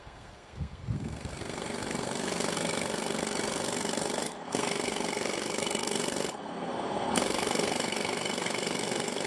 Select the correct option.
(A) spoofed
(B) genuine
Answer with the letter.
A